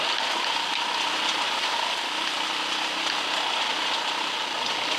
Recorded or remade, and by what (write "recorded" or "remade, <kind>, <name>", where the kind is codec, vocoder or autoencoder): recorded